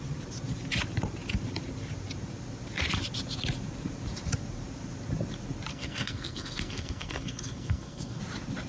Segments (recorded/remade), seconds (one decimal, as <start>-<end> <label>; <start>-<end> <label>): 0.0-5.7 recorded; 5.7-8.2 remade; 8.2-8.7 recorded